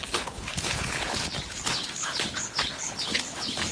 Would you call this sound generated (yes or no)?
yes